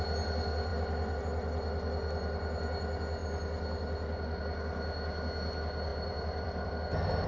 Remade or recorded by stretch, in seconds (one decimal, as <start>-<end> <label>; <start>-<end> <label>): 0.0-5.9 recorded; 5.9-6.7 remade; 6.7-7.3 recorded